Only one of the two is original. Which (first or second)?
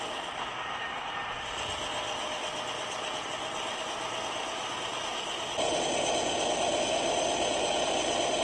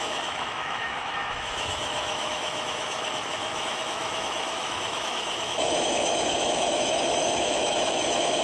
first